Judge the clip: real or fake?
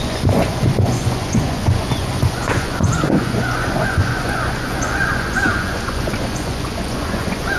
fake